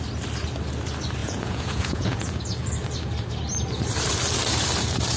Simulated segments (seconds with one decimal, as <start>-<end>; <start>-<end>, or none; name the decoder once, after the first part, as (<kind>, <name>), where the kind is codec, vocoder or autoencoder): 1.2-2.4 (vocoder, Vocos)

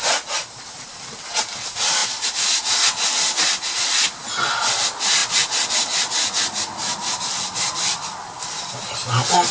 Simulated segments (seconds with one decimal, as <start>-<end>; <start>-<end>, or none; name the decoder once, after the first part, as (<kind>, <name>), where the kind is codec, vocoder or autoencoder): none

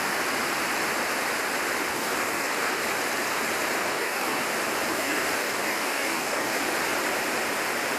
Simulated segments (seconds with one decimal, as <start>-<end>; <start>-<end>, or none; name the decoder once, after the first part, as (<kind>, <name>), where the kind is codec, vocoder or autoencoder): 1.9-2.8 (codec, DAC); 3.8-4.4; 4.9-6.6

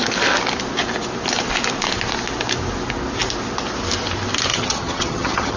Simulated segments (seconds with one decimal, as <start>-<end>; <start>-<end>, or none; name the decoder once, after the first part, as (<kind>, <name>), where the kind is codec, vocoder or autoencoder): 4.5-5.6 (vocoder, HiFi-GAN)